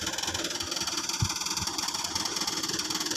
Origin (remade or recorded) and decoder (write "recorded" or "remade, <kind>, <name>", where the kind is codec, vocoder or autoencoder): recorded